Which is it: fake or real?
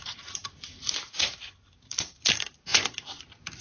fake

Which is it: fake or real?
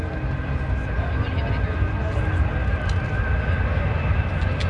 real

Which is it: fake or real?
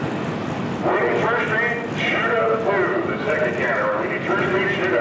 real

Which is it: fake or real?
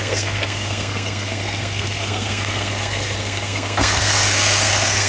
fake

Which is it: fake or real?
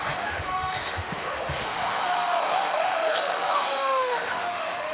fake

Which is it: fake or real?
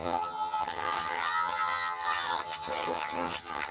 fake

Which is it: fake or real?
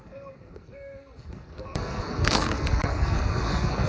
fake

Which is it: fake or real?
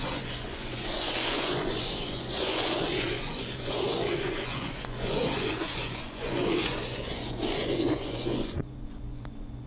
fake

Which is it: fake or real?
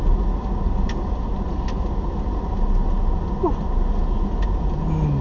real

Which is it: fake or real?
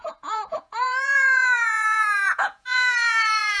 fake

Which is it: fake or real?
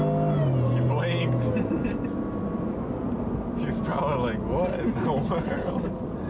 real